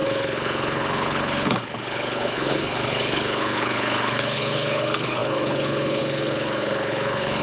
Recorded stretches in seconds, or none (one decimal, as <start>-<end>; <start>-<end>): none